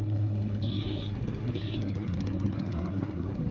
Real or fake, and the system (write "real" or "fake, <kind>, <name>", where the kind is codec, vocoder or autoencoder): fake, codec, SNAC